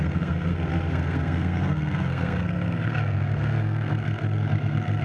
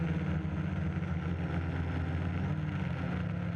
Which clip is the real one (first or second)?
second